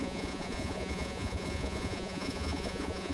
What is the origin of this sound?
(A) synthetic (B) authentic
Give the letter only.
A